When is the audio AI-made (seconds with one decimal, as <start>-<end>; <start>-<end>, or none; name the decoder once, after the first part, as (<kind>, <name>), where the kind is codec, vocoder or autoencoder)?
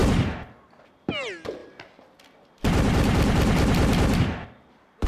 1.6-5.1 (vocoder, BigVGAN v2)